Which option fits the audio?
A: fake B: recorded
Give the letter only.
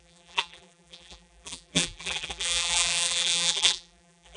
A